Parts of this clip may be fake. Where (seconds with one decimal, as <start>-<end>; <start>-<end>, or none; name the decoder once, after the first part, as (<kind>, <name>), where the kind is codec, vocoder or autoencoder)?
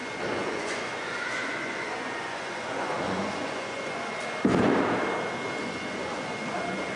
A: 0.0-4.2 (vocoder, Vocos); 5.6-7.0